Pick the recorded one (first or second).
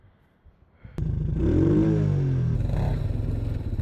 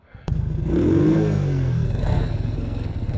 first